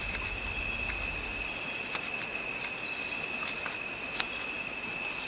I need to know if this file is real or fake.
real